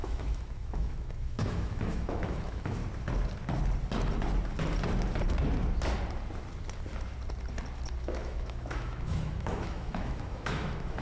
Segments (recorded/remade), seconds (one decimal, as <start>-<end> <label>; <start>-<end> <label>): 0.0-2.8 remade; 2.8-8.0 recorded; 8.0-11.0 remade